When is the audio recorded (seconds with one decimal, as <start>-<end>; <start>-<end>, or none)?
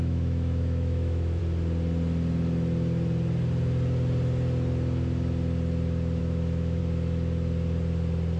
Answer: 1.4-6.2; 6.8-8.4